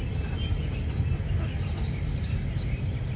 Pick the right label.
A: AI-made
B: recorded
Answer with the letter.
B